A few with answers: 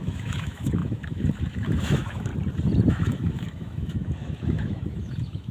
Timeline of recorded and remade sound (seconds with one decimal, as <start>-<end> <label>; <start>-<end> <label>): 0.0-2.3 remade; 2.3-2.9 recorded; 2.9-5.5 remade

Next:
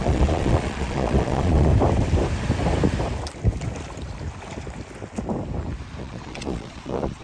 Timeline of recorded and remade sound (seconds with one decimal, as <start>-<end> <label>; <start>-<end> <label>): 0.0-1.7 remade; 1.7-6.0 recorded; 6.0-7.2 remade

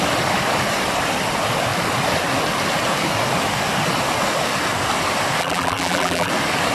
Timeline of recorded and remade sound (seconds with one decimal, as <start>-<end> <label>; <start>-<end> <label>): 0.0-5.4 recorded; 5.4-6.3 remade; 6.3-6.7 recorded